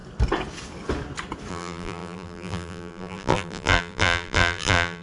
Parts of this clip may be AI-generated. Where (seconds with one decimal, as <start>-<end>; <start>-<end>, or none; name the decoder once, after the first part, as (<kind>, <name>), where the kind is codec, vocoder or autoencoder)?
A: 1.5-5.0 (vocoder, BigVGAN v2)